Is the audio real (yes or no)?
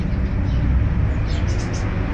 yes